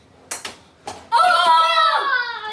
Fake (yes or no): no